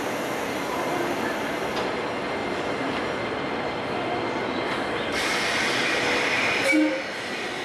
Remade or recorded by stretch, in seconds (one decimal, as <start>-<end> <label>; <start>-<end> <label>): 0.0-7.6 recorded